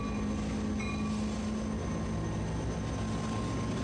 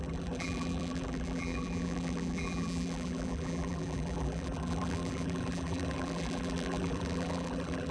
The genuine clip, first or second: first